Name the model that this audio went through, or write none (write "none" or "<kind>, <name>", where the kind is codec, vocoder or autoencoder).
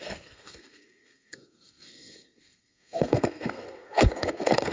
codec, SNAC